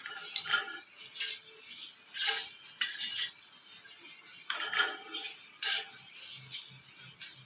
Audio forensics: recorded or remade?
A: recorded